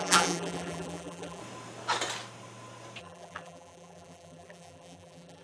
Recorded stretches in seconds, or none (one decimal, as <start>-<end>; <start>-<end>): 1.4-3.0